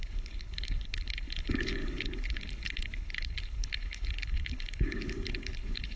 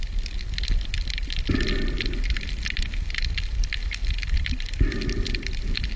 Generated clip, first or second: first